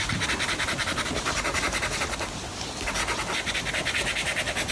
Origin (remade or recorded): recorded